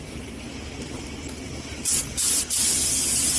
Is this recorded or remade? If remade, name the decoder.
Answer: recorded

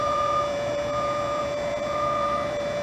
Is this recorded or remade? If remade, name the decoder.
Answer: remade, vocoder, Vocos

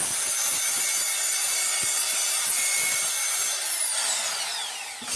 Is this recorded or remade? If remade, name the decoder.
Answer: recorded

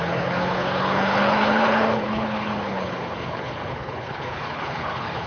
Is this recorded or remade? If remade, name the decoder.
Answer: remade, codec, HILCodec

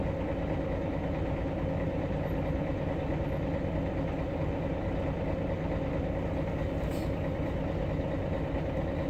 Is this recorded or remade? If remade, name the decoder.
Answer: recorded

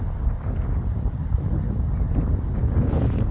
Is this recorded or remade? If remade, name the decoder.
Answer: recorded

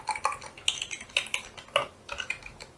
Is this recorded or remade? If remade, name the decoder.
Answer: recorded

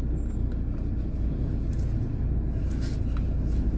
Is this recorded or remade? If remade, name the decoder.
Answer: recorded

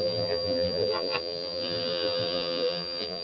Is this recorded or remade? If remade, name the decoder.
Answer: remade, vocoder, BigVGAN v2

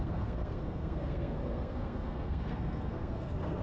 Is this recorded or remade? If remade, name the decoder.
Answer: remade, codec, SNAC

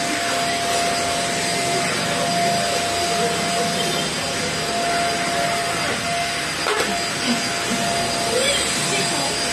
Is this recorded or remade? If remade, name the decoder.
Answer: recorded